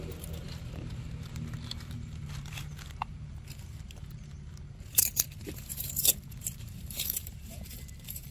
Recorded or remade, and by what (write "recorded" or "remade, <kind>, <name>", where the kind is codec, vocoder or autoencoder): remade, vocoder, BigVGAN v2